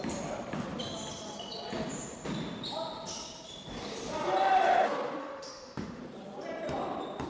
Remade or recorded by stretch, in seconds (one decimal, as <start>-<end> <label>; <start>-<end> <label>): 0.0-5.2 recorded; 5.2-6.0 remade; 6.0-7.3 recorded